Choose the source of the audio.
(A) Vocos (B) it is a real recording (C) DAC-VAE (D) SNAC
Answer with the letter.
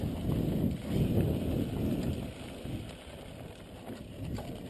B